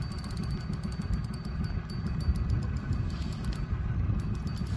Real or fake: real